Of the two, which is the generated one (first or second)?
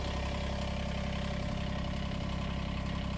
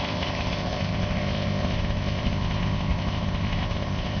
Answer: second